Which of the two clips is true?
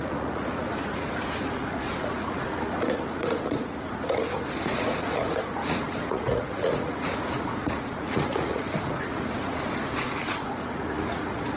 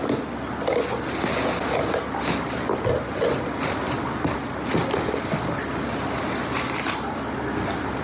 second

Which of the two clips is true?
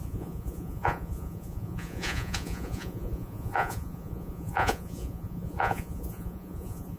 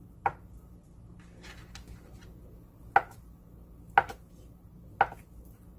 second